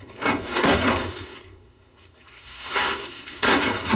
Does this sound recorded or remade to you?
remade